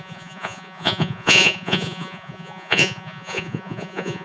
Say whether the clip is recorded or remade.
remade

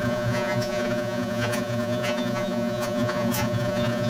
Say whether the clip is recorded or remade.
remade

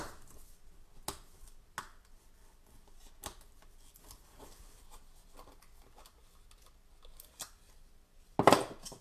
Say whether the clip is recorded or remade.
recorded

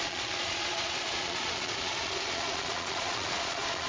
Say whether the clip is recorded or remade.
remade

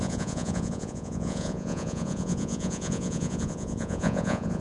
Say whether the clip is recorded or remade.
remade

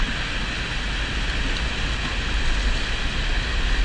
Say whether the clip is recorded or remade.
recorded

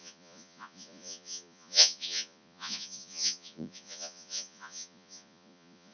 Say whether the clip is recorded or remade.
remade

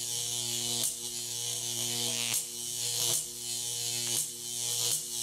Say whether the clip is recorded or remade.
recorded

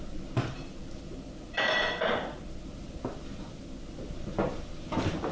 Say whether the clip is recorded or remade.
recorded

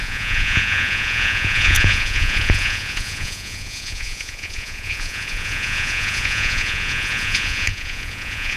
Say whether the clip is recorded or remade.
remade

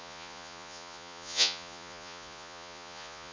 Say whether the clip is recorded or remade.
remade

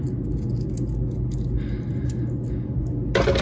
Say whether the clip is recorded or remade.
recorded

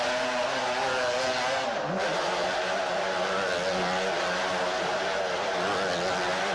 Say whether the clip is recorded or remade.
recorded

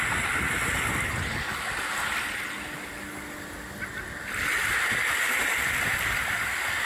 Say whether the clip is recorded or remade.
recorded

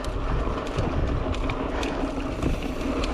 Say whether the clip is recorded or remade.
recorded